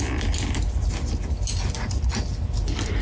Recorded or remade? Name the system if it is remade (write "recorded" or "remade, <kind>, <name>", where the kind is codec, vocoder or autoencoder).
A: recorded